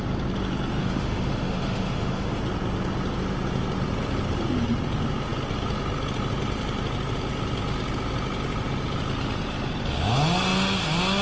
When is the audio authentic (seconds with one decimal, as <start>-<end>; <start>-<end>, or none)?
0.0-0.8; 2.4-11.2